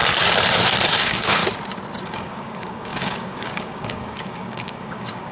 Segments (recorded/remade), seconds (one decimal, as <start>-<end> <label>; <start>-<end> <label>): 0.0-0.9 recorded; 0.9-1.4 remade; 1.4-2.0 recorded; 2.0-5.3 remade